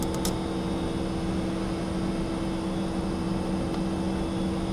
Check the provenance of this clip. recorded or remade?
recorded